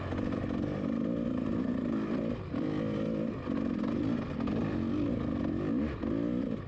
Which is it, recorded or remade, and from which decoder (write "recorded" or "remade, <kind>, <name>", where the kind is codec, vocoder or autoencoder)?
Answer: recorded